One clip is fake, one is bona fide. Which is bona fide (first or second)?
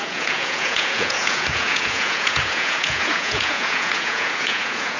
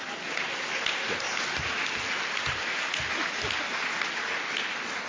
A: second